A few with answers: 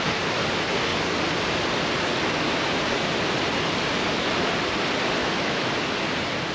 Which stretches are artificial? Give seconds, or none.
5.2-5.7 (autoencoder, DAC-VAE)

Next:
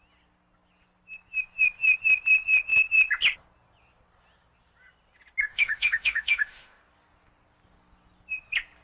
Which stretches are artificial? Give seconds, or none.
5.5-6.8 (autoencoder, DAC-VAE)